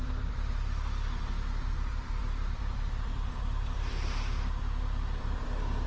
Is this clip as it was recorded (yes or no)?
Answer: no